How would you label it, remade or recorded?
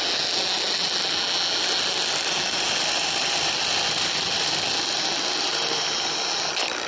recorded